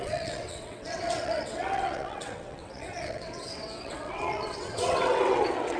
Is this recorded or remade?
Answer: remade